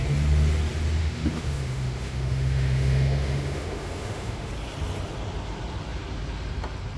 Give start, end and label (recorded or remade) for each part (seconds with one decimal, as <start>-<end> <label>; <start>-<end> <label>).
0.0-1.0 recorded; 1.0-4.5 remade; 4.5-7.0 recorded